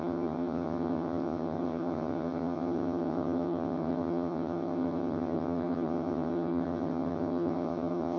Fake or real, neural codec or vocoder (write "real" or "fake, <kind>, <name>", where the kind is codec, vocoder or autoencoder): fake, vocoder, HiFi-GAN